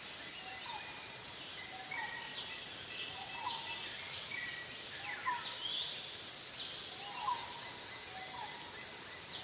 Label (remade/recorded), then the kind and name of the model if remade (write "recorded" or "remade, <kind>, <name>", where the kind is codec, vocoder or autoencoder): recorded